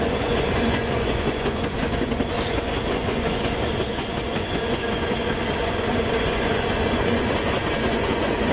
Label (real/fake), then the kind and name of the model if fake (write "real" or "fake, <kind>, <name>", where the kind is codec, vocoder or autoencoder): fake, vocoder, Vocos